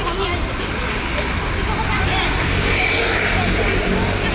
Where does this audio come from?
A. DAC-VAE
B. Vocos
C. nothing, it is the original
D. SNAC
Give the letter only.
C